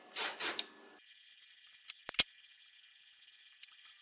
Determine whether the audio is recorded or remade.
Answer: recorded